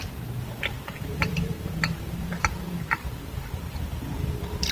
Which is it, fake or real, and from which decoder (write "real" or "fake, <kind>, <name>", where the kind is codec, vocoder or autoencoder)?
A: fake, vocoder, BigVGAN v2